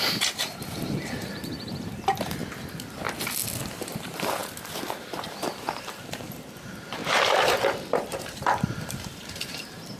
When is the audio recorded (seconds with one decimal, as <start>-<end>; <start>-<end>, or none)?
2.4-3.7; 4.4-5.0